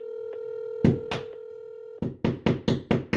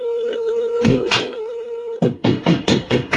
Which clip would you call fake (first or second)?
second